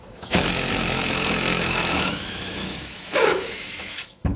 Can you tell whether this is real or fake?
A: fake